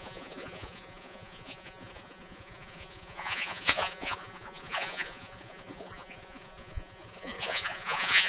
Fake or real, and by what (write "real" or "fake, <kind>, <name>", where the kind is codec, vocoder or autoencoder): fake, vocoder, Vocos